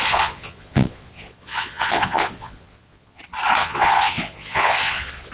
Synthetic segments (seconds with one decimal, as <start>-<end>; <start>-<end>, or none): 0.0-3.2; 3.6-5.3